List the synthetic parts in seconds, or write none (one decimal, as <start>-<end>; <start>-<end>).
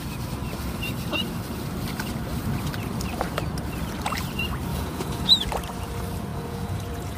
4.7-5.3; 6.3-7.2